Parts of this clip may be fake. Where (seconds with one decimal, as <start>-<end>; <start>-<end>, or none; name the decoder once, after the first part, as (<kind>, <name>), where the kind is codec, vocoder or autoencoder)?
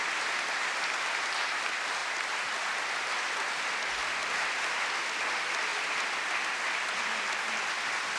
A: none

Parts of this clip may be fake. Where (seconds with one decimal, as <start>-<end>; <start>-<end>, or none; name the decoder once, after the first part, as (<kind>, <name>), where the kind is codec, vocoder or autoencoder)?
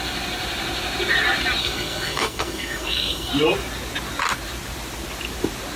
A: 1.6-3.3 (codec, SNAC)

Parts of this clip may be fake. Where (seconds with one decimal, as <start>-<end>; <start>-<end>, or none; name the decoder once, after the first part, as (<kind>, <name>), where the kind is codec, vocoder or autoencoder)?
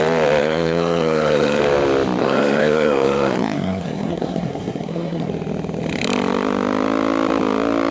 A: 0.4-1.6 (codec, SNAC); 2.2-5.3